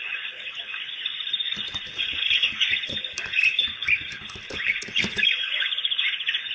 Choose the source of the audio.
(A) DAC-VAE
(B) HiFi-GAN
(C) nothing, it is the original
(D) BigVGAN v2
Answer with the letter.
D